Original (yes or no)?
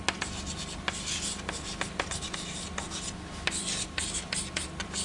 yes